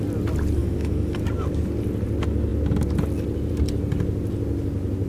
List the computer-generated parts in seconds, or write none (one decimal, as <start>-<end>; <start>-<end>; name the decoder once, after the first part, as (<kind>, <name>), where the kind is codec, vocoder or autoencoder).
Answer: 0.6-1.2 (autoencoder, DAC-VAE)